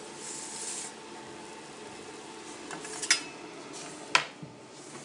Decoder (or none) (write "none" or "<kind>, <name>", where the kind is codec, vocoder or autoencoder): none